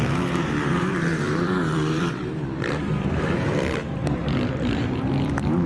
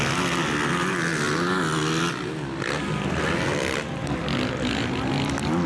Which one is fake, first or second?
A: first